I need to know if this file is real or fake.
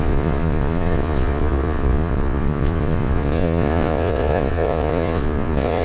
fake